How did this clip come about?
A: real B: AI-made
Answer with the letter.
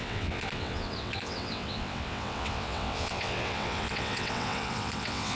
B